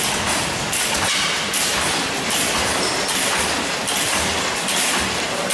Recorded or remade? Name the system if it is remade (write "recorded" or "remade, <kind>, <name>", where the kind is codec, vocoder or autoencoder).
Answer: recorded